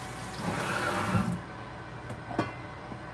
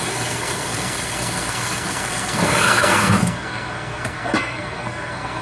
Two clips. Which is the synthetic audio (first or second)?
second